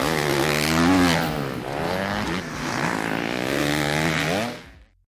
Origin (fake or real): real